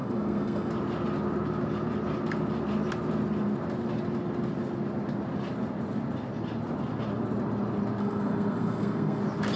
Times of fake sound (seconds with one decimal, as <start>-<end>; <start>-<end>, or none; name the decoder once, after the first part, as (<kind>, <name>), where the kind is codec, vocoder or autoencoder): 0.0-0.7 (codec, SNAC); 8.0-9.2